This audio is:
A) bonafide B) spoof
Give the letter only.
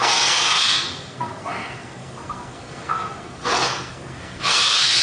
B